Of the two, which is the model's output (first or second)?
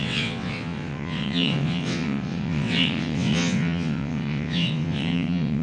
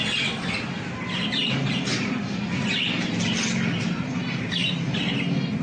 first